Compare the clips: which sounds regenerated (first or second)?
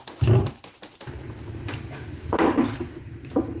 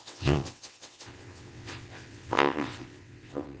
second